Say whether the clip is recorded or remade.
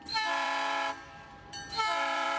remade